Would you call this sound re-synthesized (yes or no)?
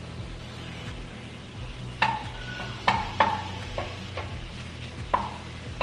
no